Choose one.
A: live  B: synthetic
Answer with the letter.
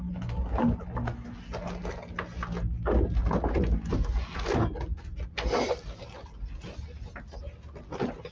A